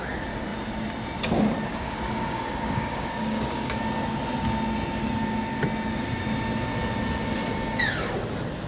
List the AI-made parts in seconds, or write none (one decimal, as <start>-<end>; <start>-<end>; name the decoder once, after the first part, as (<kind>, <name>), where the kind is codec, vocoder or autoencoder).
1.7-3.8 (codec, DAC)